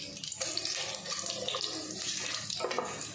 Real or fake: real